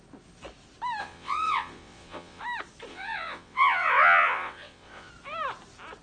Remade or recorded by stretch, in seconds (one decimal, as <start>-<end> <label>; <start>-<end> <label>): 0.0-1.0 recorded; 1.0-2.4 remade; 2.4-2.9 recorded; 2.9-5.1 remade; 5.1-6.0 recorded

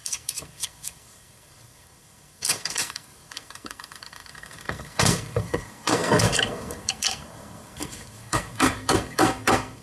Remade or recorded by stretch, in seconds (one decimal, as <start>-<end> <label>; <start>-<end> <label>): 0.0-9.8 remade

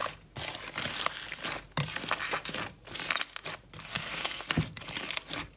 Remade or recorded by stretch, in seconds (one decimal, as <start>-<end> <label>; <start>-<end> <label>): 0.0-3.9 recorded; 3.9-4.5 remade; 4.5-5.6 recorded

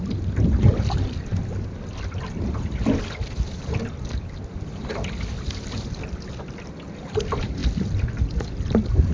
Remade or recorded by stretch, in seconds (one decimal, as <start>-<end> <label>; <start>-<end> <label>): 0.0-9.1 recorded

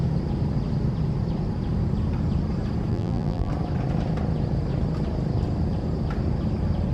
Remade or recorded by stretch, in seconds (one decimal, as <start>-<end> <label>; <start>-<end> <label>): 0.0-2.9 recorded; 2.9-3.5 remade; 3.5-6.9 recorded

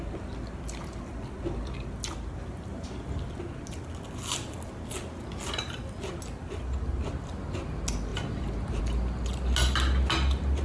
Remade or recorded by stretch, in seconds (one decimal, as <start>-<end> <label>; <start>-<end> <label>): 0.0-10.6 recorded